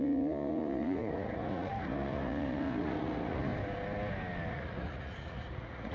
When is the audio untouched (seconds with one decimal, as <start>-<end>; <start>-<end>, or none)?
3.5-4.5